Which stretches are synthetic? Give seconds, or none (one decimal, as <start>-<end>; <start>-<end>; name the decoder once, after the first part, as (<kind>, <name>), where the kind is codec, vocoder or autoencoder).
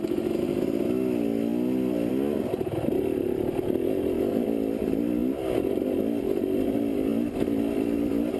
none